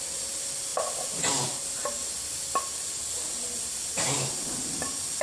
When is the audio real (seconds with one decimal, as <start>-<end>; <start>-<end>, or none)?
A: 0.0-5.2